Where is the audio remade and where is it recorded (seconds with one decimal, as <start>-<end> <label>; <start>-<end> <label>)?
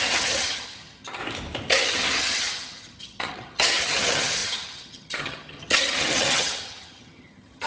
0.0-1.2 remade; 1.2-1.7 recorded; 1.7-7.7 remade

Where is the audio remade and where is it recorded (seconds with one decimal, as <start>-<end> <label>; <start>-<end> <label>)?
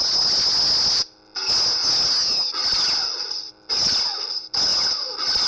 0.0-5.5 recorded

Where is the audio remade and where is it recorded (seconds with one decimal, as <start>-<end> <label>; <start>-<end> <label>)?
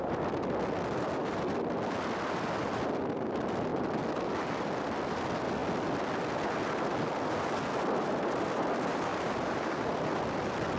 0.0-10.8 recorded